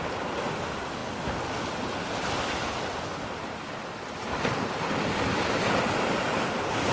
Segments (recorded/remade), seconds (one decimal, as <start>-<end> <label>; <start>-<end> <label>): 0.0-6.9 recorded